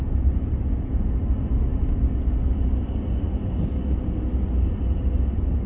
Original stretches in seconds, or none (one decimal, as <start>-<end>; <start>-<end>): 0.0-5.7